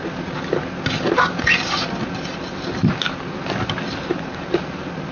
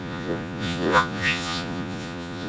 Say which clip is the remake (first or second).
second